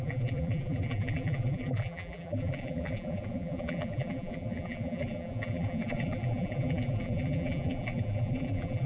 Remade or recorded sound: remade